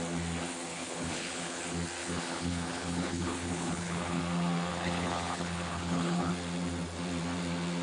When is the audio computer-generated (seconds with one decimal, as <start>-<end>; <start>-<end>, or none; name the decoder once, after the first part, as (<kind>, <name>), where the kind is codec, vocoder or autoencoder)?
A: 0.7-1.6 (codec, HILCodec); 2.0-4.2; 4.7-6.3